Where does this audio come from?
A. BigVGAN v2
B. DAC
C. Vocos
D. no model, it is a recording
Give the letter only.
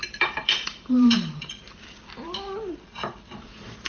A